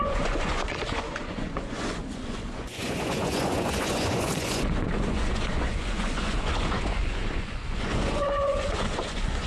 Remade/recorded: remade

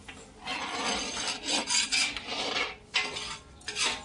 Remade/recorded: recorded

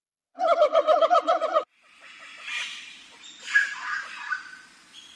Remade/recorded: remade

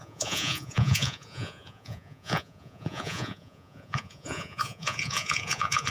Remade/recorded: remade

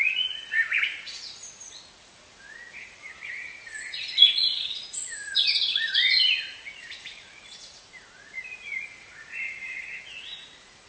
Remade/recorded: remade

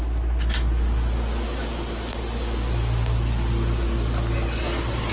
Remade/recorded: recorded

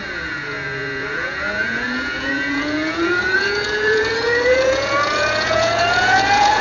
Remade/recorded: remade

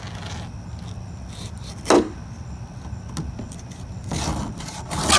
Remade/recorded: recorded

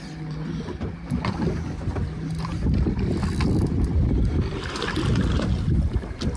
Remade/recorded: recorded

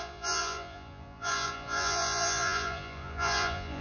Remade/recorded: remade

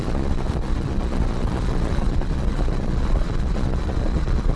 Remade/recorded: remade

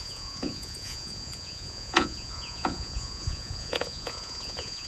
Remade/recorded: remade